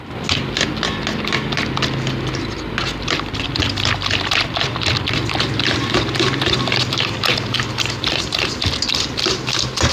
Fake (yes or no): no